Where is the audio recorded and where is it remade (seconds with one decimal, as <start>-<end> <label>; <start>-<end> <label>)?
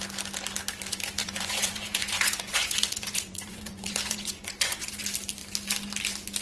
0.0-1.2 recorded; 1.2-5.0 remade; 5.0-6.4 recorded